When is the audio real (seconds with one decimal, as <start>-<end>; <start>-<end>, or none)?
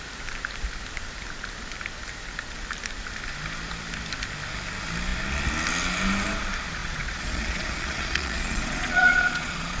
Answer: 0.0-6.8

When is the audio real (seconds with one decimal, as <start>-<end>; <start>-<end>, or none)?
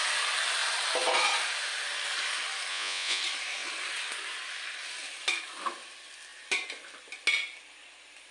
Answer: 0.0-2.7; 3.2-8.3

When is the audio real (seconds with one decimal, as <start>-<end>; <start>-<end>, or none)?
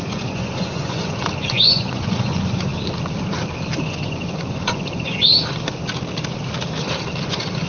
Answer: 2.7-3.8; 5.3-7.2